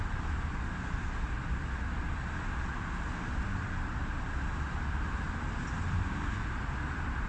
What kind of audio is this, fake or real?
real